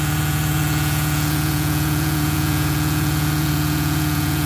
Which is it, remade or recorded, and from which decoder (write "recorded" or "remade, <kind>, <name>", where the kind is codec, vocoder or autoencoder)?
remade, vocoder, Vocos